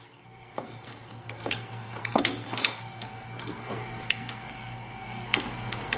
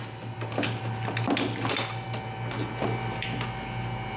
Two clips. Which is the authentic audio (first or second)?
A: second